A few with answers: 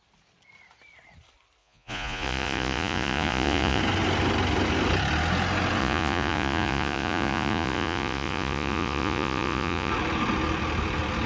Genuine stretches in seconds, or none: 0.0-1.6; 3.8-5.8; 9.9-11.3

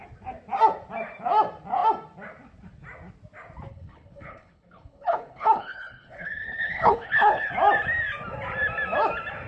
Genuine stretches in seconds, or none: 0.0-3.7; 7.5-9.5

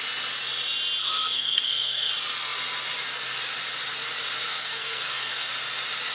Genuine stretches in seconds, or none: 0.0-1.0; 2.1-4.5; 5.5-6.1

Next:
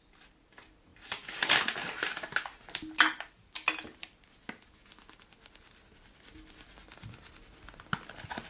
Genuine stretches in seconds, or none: 0.0-8.5

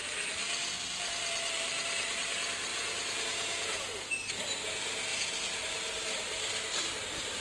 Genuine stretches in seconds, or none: 0.0-2.7; 4.4-7.4